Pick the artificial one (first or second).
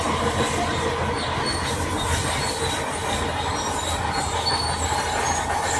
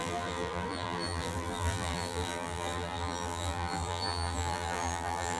second